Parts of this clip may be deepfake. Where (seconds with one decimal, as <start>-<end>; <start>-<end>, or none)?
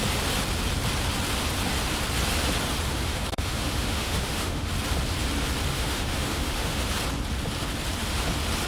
2.9-4.7; 5.7-6.9